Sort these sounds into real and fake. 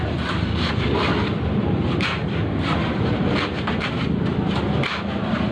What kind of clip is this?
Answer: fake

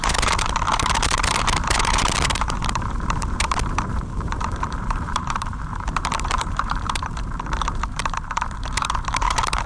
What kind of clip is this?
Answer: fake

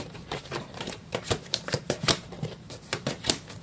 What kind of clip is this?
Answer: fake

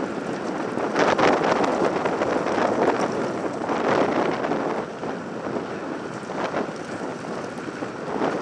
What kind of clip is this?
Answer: real